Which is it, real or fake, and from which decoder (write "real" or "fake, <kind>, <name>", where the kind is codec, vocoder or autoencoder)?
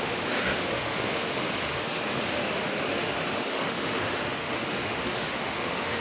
fake, autoencoder, DAC-VAE